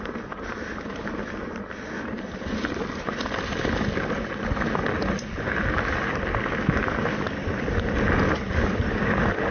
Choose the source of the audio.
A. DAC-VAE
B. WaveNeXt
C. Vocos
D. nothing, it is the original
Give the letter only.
D